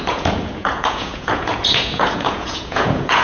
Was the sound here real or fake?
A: fake